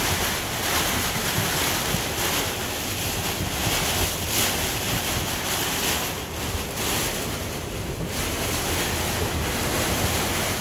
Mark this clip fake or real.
real